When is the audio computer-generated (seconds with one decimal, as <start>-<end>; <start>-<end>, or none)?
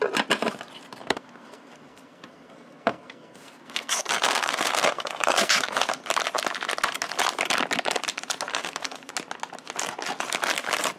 1.0-6.0; 8.5-9.1